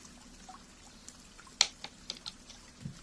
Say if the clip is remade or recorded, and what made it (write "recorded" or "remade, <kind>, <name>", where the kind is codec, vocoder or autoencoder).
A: recorded